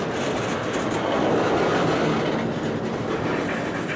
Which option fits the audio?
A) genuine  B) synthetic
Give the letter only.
A